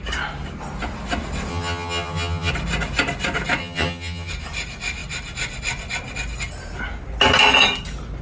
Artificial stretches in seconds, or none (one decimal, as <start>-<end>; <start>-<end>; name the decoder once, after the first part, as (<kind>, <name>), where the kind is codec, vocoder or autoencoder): 1.5-2.5 (vocoder, HiFi-GAN); 3.6-4.3